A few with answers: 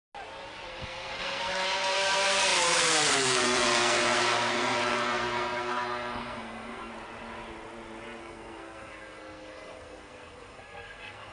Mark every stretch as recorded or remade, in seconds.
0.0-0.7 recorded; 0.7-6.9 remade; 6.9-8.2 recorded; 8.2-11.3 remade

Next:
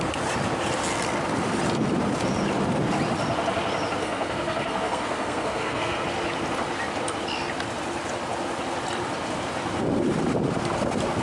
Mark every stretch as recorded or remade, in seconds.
0.0-4.0 recorded; 4.0-6.0 remade; 6.0-11.2 recorded

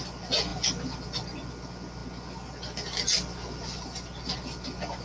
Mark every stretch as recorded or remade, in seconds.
0.0-5.0 recorded

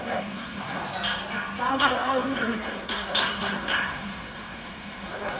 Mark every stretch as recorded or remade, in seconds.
0.0-0.8 remade; 0.8-1.7 recorded; 1.7-5.4 remade

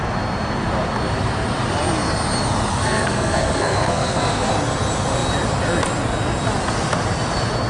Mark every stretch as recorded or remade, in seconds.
0.0-2.7 recorded; 2.7-4.5 remade; 4.5-7.7 recorded